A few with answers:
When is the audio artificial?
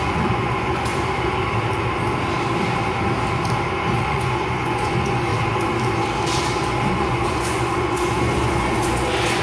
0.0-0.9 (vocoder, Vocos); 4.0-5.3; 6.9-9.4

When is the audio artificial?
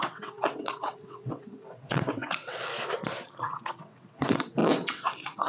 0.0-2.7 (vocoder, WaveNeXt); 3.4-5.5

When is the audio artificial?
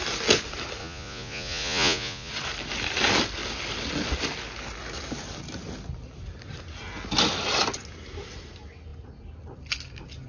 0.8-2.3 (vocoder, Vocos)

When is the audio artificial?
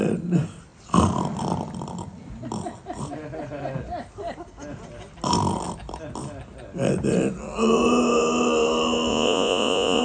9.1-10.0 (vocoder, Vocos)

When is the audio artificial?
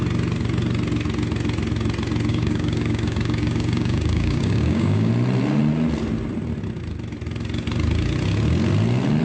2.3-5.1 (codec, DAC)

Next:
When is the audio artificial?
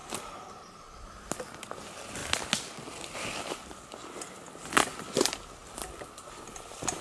0.0-0.8 (vocoder, BigVGAN v2)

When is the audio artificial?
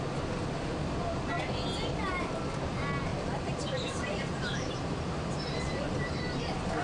3.1-6.1 (vocoder, BigVGAN v2)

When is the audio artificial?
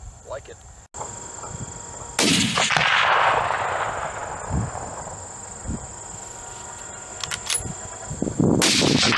none